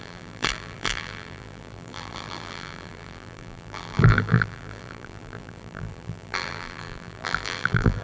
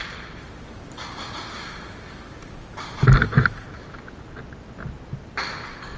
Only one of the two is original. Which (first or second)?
second